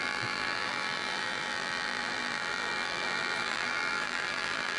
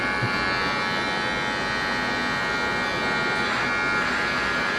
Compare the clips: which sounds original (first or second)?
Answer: second